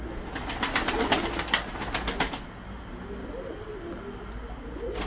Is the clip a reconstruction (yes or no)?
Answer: no